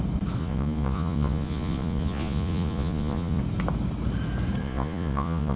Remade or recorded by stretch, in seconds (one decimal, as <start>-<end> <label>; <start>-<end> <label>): 0.0-0.4 recorded; 0.4-3.4 remade; 3.4-4.6 recorded; 4.6-5.6 remade